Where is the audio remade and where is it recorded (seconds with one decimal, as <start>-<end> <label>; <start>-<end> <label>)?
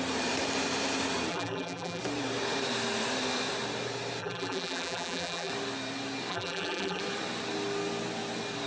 0.0-1.3 recorded; 1.3-2.0 remade; 2.0-4.2 recorded; 4.2-5.5 remade; 5.5-6.3 recorded; 6.3-7.0 remade; 7.0-8.7 recorded